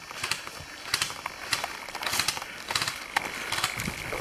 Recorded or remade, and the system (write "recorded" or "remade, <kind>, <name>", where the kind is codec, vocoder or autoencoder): recorded